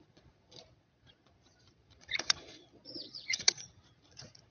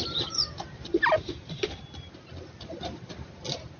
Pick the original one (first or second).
second